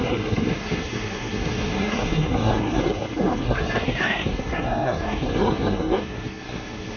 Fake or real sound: fake